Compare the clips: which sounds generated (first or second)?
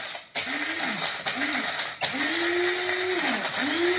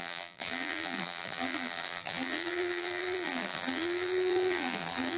second